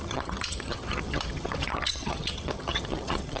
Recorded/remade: remade